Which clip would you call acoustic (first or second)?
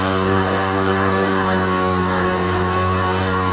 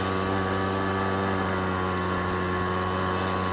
second